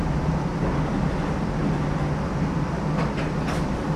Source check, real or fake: real